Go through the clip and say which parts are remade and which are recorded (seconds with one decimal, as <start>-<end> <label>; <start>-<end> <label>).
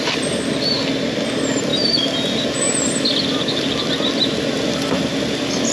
0.0-5.7 recorded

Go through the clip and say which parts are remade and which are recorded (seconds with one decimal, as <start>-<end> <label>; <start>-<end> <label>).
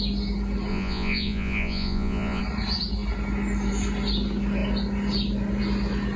0.0-0.7 recorded; 0.7-2.4 remade; 2.4-6.2 recorded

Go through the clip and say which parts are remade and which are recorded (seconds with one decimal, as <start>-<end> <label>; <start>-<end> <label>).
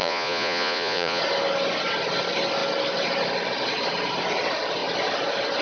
0.0-1.2 remade; 1.2-5.6 recorded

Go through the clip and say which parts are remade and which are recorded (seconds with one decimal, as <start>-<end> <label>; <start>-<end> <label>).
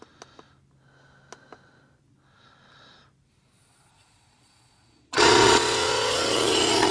0.0-3.9 recorded; 3.9-6.9 remade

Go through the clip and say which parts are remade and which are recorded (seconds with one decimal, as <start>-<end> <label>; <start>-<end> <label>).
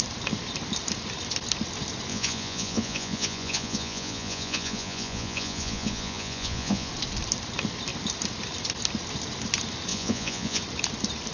0.0-2.1 recorded; 2.1-6.9 remade; 6.9-9.9 recorded; 9.9-10.6 remade; 10.6-11.3 recorded